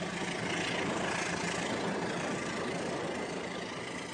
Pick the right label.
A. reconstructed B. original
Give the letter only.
B